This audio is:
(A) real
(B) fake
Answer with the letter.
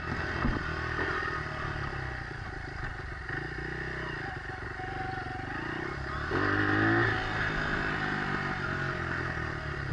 A